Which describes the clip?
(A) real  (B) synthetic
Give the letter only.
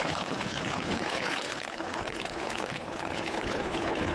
B